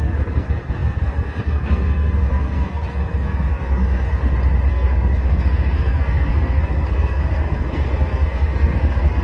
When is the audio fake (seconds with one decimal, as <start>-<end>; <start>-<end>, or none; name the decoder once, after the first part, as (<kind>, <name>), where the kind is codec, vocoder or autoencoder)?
0.0-4.1 (codec, SNAC); 4.7-9.2